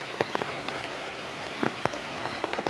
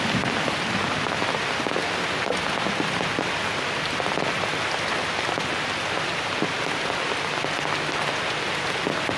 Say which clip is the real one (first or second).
second